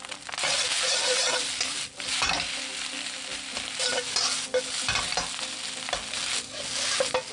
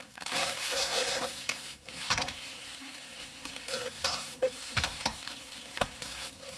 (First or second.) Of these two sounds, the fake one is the second